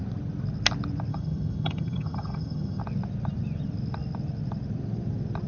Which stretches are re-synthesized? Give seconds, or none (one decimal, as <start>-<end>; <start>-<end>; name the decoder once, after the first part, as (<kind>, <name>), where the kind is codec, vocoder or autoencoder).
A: 1.1-2.8 (vocoder, HiFi-GAN)